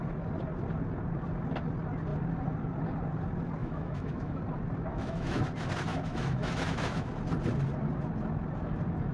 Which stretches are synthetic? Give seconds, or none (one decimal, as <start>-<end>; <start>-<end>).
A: 3.6-4.4; 4.9-5.4; 5.9-7.1